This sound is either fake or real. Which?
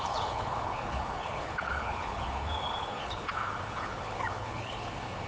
fake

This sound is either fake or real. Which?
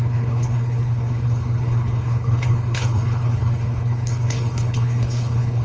fake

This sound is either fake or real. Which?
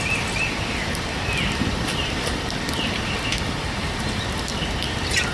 real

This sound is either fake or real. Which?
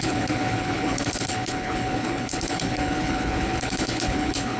fake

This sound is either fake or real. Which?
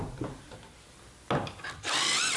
real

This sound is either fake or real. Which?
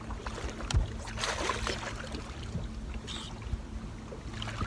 real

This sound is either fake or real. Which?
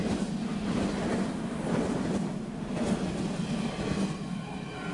real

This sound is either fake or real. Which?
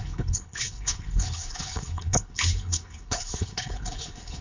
fake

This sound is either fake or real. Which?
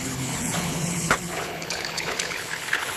fake